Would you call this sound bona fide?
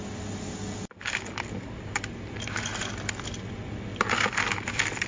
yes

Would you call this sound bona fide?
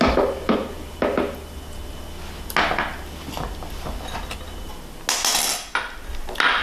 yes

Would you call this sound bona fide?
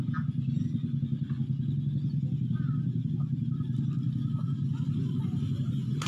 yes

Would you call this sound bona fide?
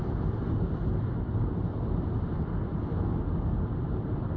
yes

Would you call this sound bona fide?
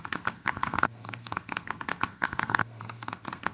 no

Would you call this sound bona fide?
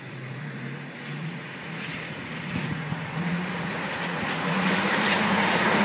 no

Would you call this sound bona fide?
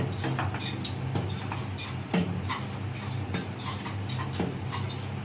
yes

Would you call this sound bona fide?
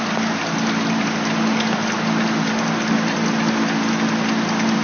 yes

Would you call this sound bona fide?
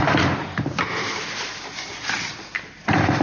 yes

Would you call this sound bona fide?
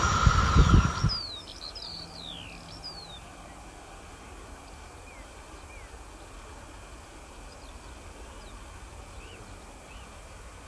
yes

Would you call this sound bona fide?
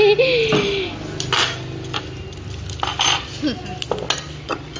yes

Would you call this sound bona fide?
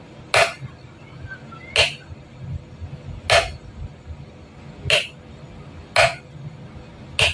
yes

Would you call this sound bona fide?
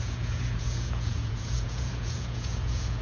no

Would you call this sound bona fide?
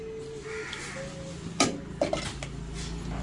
yes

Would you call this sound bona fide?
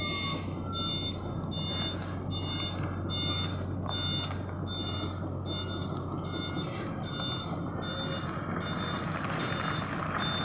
yes